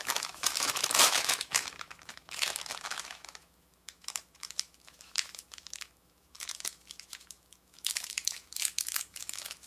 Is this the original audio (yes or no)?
no